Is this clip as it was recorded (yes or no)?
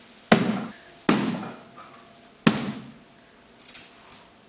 yes